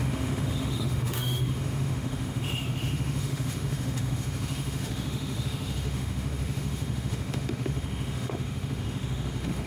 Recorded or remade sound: remade